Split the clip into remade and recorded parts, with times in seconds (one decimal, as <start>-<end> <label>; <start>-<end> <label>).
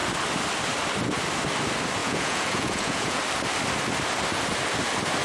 0.0-2.0 recorded; 2.0-3.2 remade; 3.2-5.2 recorded